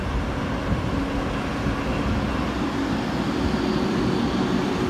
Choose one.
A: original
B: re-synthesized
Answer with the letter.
A